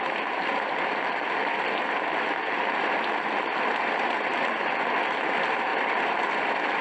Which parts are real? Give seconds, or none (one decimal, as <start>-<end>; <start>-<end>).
none

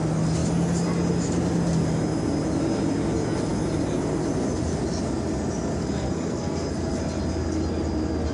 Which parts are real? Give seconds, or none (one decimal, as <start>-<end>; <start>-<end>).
0.0-5.8; 7.0-8.3

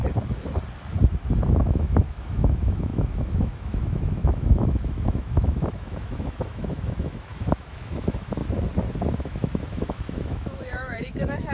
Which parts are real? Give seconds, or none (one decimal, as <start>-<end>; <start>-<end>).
0.0-1.5; 8.4-9.2

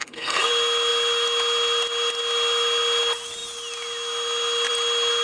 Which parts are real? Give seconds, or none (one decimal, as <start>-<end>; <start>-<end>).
0.5-5.2

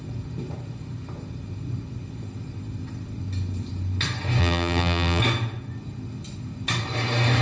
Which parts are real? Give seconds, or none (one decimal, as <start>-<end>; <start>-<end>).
0.0-4.4; 5.2-7.4

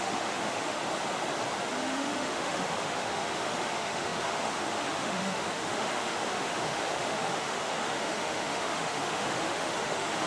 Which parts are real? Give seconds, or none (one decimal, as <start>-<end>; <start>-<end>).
0.8-1.8